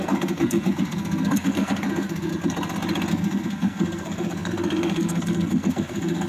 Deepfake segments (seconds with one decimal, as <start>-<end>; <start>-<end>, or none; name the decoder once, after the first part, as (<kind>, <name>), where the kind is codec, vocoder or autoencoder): 0.0-2.3 (codec, SNAC); 3.1-6.3